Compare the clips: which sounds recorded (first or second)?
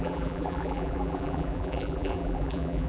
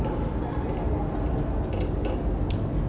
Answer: second